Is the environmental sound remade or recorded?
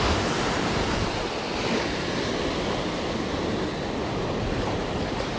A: recorded